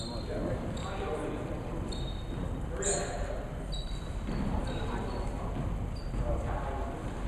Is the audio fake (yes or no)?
no